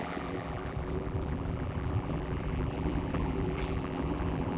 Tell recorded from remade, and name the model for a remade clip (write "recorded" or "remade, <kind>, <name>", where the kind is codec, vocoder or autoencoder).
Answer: remade, vocoder, BigVGAN v2